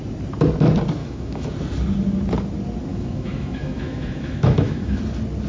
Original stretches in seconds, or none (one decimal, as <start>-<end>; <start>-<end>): 0.0-1.0; 1.5-2.9; 5.0-5.5